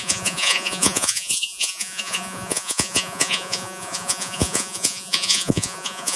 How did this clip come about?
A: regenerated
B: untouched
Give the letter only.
A